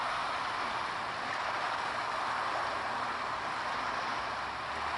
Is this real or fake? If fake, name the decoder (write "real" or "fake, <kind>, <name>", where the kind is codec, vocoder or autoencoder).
real